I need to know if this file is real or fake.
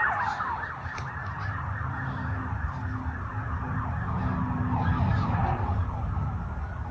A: real